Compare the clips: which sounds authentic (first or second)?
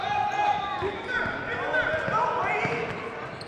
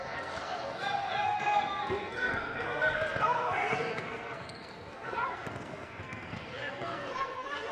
first